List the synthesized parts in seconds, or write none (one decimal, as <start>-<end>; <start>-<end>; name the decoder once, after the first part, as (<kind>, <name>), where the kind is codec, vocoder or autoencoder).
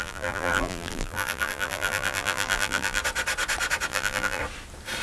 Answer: 0.0-3.0 (vocoder, BigVGAN v2); 3.9-4.4